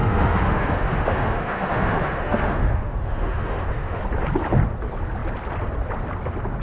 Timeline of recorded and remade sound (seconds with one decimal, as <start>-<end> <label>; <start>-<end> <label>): 0.0-4.0 remade; 4.0-6.6 recorded